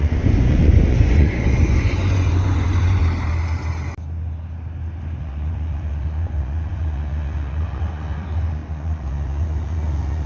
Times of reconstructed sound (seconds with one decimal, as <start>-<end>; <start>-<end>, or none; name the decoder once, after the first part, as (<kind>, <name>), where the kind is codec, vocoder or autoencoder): 0.0-3.0 (vocoder, Vocos); 5.2-10.3